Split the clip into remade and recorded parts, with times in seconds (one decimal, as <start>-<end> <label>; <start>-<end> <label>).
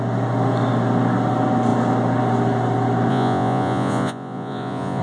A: 0.0-3.1 recorded; 3.1-5.0 remade